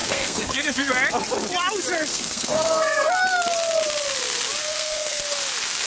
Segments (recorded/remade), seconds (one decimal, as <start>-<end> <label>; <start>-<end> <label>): 0.0-0.9 remade; 0.9-2.1 recorded; 2.1-3.1 remade; 3.1-4.6 recorded; 4.6-5.2 remade; 5.2-5.9 recorded

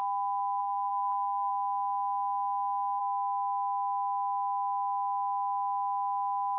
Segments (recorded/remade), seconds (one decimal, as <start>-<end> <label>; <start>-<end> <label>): 0.0-0.6 recorded; 0.6-1.5 remade; 1.5-6.6 recorded